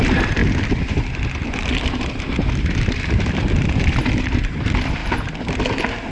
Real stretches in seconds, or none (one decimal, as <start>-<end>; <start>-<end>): 5.0-6.1